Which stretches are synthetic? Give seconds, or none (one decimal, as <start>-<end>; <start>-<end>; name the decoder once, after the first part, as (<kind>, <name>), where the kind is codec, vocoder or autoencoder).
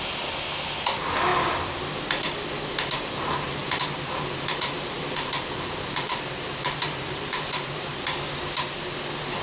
3.6-7.9 (vocoder, BigVGAN v2)